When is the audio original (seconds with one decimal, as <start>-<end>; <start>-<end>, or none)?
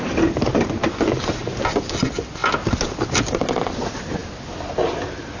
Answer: 0.0-5.4